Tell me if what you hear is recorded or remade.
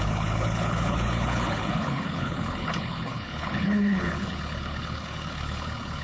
remade